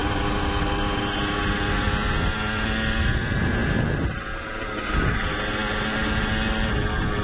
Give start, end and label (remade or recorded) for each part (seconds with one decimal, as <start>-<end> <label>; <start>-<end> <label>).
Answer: 0.0-7.2 recorded